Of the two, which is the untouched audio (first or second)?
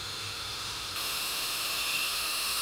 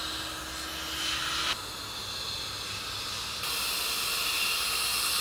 second